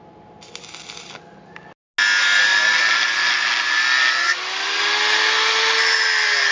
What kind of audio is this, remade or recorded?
recorded